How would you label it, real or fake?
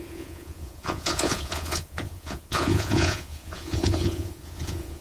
fake